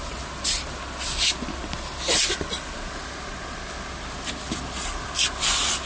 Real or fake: real